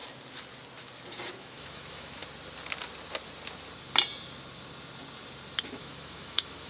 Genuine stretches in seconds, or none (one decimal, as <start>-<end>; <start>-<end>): 0.0-1.3; 2.2-5.7